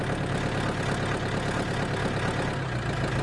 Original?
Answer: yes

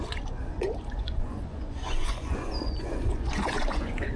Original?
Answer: no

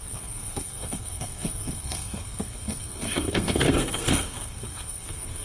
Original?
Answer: no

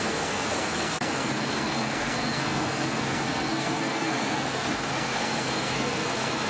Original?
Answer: no